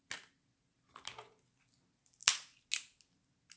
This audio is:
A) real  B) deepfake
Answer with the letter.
A